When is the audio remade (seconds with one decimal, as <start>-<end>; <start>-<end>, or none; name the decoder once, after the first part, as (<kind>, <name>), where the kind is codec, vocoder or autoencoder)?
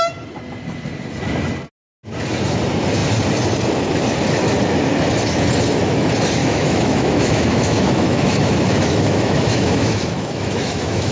6.4-11.1 (autoencoder, DAC-VAE)